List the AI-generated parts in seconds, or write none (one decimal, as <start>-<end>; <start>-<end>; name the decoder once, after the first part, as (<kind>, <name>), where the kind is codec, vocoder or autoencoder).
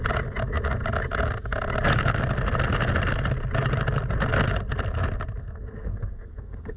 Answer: 5.4-6.8 (codec, SNAC)